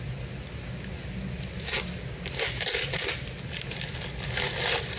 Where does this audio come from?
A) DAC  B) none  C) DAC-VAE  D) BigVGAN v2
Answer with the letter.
B